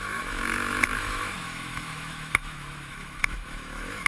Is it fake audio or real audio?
fake